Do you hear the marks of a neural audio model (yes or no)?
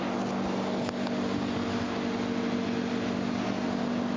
no